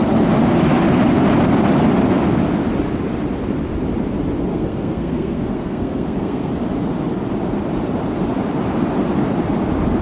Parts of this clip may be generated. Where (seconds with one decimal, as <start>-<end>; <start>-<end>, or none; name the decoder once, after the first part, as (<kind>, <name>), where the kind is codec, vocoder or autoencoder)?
4.5-6.5 (codec, SNAC)